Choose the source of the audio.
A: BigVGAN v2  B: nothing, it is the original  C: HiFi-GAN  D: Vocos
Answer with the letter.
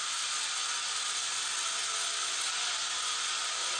B